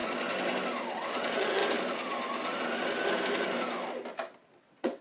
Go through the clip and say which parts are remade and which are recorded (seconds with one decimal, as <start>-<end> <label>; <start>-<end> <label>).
0.0-0.9 recorded; 0.9-1.6 remade; 1.6-4.6 recorded; 4.6-5.0 remade